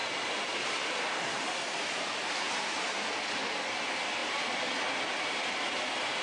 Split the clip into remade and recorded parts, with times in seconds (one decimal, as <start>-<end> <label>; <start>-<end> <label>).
0.0-1.9 remade; 1.9-4.2 recorded; 4.2-5.8 remade; 5.8-6.2 recorded